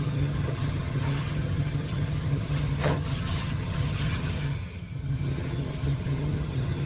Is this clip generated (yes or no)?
yes